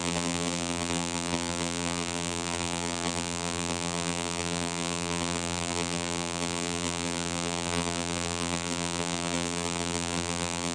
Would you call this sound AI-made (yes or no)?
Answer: yes